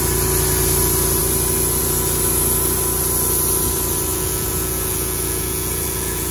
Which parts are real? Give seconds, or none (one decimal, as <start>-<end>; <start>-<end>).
0.0-4.1